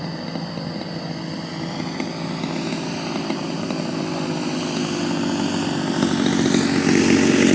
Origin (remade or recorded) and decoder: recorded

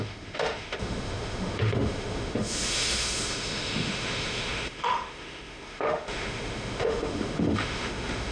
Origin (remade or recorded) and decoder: remade, autoencoder, DAC-VAE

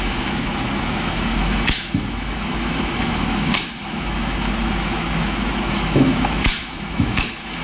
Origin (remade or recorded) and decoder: remade, autoencoder, DAC-VAE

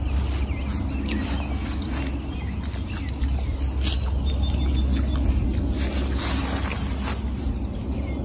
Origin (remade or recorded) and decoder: recorded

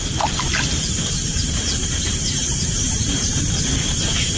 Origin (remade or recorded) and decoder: remade, vocoder, BigVGAN v2